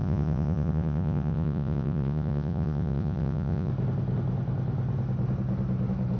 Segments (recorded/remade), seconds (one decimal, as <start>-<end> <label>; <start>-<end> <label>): 0.0-3.7 remade; 3.7-6.2 recorded